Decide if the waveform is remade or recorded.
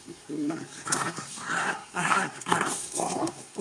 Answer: remade